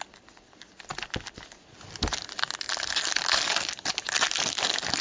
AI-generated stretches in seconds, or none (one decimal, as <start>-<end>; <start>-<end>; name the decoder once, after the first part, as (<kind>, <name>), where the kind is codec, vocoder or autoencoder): none